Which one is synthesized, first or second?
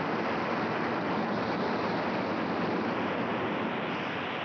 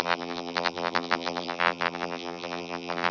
second